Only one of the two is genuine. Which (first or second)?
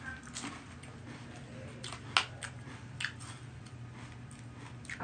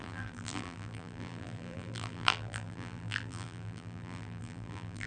first